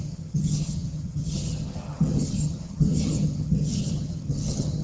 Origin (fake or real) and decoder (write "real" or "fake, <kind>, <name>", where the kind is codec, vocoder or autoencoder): fake, vocoder, HiFi-GAN